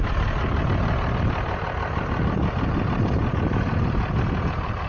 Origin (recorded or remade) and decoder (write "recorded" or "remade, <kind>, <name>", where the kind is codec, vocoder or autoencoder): recorded